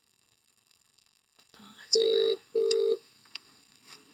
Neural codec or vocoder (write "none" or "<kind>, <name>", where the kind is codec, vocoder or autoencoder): codec, SNAC